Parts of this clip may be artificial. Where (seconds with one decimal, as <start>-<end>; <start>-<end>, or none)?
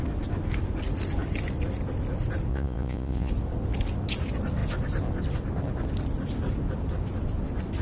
2.5-3.3